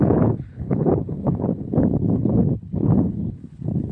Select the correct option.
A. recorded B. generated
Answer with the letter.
B